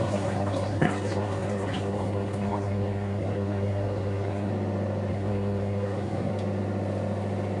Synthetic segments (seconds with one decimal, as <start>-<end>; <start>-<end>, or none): 0.0-4.5; 5.1-6.3